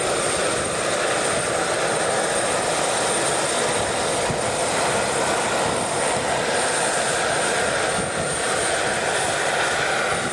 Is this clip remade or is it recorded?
recorded